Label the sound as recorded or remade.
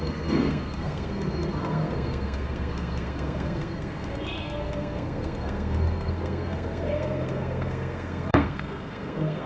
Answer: remade